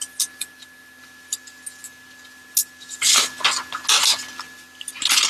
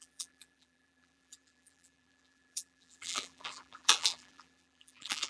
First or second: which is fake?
second